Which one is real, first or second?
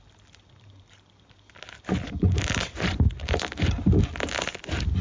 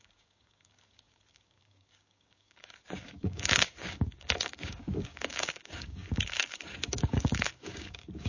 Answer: first